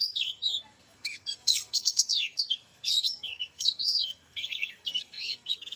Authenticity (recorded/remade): remade